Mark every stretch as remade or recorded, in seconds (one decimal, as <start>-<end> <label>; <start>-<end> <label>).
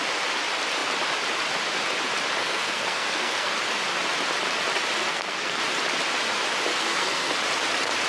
0.0-2.4 recorded; 2.4-3.5 remade; 3.5-5.1 recorded; 5.1-5.6 remade; 5.6-6.7 recorded; 6.7-7.3 remade; 7.3-8.1 recorded